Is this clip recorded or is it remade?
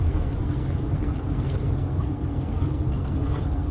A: remade